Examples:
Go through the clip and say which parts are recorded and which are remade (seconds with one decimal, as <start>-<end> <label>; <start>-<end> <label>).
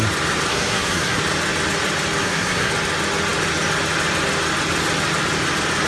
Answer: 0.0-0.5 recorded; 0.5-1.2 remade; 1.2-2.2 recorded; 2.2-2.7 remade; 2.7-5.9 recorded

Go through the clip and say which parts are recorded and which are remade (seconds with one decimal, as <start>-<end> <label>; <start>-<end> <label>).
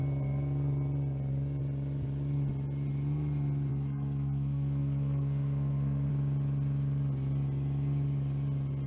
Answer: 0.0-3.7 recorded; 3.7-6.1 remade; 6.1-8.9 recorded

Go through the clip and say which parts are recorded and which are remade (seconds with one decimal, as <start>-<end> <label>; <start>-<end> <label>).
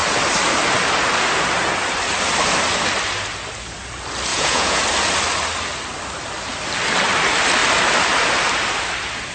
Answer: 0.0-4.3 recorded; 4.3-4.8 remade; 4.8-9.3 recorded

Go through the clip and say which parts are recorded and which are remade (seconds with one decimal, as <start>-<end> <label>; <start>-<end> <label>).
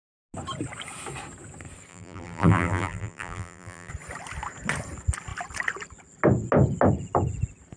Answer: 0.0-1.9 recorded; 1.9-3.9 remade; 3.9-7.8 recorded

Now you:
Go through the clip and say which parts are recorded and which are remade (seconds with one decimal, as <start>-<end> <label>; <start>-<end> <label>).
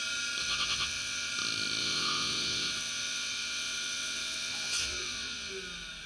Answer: 0.0-0.4 recorded; 0.4-1.3 remade; 1.3-1.8 recorded; 1.8-5.5 remade; 5.5-6.1 recorded